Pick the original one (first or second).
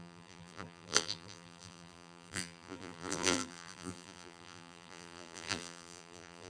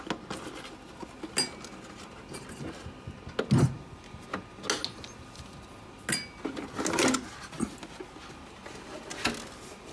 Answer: second